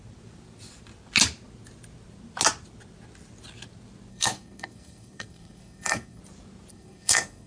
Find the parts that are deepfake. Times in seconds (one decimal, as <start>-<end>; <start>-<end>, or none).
4.1-6.2; 6.7-7.5